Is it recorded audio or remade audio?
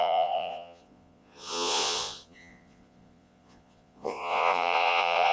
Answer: remade